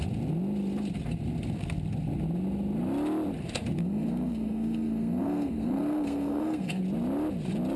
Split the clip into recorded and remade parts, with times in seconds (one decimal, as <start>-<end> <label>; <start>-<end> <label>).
0.0-3.8 recorded; 3.8-6.8 remade; 6.8-7.8 recorded